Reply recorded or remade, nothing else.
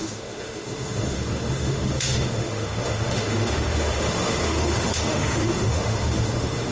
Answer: remade